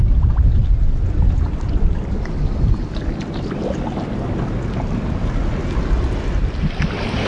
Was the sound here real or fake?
real